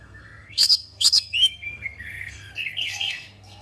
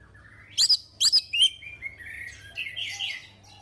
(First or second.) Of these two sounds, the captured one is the second